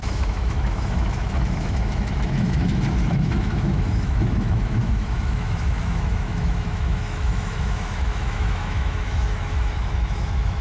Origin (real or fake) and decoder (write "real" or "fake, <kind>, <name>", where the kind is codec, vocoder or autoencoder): fake, autoencoder, DAC-VAE